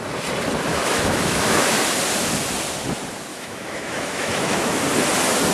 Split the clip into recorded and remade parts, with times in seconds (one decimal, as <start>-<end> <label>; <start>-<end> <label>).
0.0-0.7 recorded; 0.7-1.7 remade; 1.7-3.3 recorded; 3.3-4.8 remade; 4.8-5.5 recorded